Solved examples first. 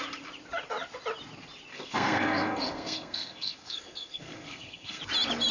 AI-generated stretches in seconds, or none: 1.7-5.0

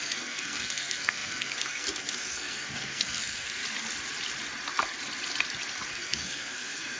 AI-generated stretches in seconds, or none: 0.0-3.6; 5.9-7.0

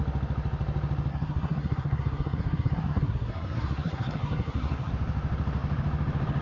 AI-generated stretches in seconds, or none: 1.1-4.9

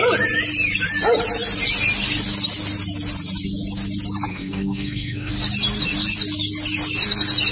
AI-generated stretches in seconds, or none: 4.3-5.3

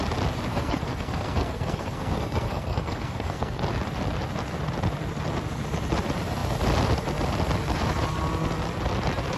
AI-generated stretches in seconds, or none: 0.5-3.6